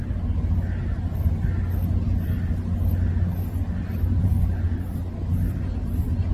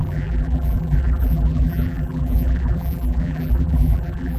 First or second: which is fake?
second